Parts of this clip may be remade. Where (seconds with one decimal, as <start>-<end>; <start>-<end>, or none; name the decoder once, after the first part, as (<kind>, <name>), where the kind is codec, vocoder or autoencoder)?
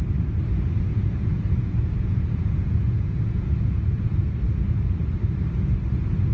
0.9-4.0 (vocoder, Vocos)